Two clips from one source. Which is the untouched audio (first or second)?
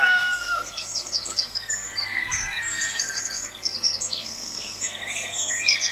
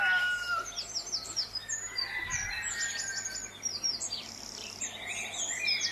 second